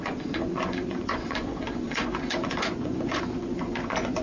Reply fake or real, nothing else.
fake